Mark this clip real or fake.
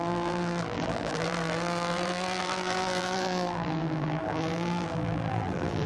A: fake